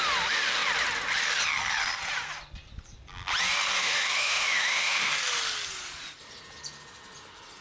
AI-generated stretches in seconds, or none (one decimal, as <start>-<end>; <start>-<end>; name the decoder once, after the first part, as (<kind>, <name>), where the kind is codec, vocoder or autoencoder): 3.8-5.1 (autoencoder, DAC-VAE)